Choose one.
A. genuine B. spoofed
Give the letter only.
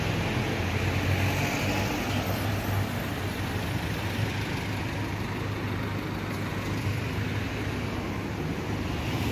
A